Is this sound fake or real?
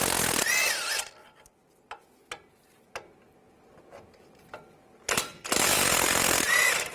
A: real